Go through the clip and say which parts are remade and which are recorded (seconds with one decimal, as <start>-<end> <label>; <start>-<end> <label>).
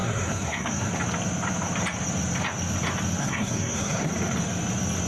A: 0.0-0.9 remade; 0.9-3.2 recorded; 3.2-4.1 remade; 4.1-5.1 recorded